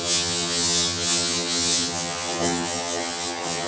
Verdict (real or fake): fake